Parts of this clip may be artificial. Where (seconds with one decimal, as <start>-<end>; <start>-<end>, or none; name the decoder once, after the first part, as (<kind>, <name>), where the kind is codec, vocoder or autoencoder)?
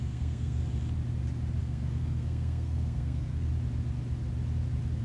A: 0.0-0.6 (codec, SNAC); 1.6-3.5